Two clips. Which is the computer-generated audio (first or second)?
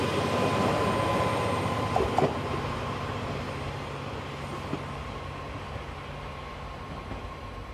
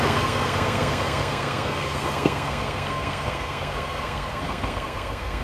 second